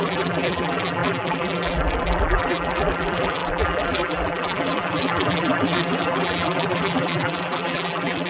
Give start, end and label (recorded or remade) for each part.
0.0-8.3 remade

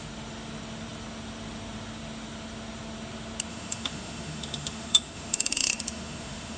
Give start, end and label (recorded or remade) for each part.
0.0-3.5 recorded; 3.5-6.6 remade

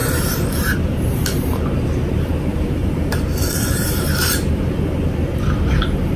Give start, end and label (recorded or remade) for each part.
0.0-1.0 remade; 1.0-2.5 recorded; 2.5-4.1 remade; 4.1-6.2 recorded

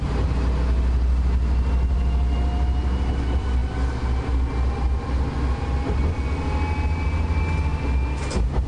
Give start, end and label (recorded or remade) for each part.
0.0-8.7 recorded

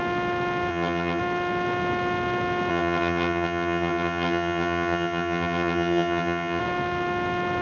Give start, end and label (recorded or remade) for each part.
0.0-0.7 recorded; 0.7-1.2 remade; 1.2-2.7 recorded; 2.7-6.6 remade; 6.6-7.6 recorded

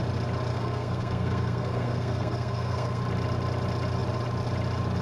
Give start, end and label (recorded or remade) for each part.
0.0-0.5 recorded; 0.5-3.0 remade; 3.0-5.0 recorded

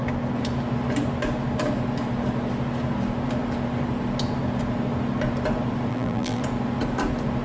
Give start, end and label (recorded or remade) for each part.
0.0-5.9 recorded; 5.9-6.4 remade; 6.4-7.4 recorded

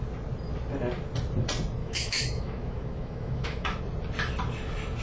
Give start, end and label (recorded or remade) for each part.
0.0-1.8 recorded; 1.8-3.8 remade; 3.8-5.0 recorded